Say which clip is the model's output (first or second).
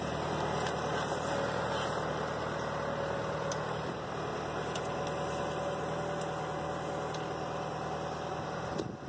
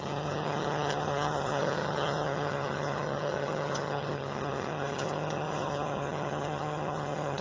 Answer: second